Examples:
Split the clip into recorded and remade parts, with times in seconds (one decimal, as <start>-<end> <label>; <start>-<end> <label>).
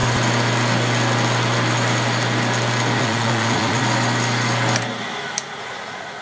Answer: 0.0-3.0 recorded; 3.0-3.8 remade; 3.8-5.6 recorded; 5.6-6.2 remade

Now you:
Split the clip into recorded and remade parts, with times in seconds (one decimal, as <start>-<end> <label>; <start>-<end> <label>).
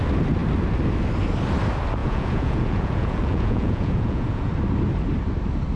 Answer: 0.0-2.0 recorded; 2.0-4.5 remade; 4.5-5.8 recorded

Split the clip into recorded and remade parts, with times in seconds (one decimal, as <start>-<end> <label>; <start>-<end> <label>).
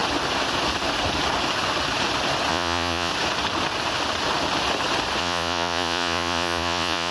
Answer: 0.0-2.5 recorded; 2.5-3.1 remade; 3.1-5.2 recorded; 5.2-7.1 remade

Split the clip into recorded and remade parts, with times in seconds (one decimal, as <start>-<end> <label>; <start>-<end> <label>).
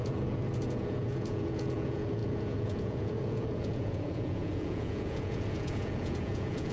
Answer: 0.0-6.7 remade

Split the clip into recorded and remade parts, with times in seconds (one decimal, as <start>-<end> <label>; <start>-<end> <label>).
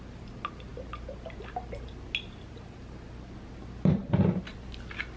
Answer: 0.0-5.2 recorded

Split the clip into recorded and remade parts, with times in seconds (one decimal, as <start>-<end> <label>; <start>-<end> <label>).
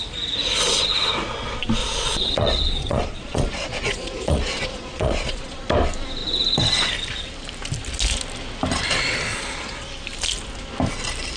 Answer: 0.0-1.8 recorded; 1.8-5.6 remade; 5.6-9.3 recorded; 9.3-9.9 remade; 9.9-11.4 recorded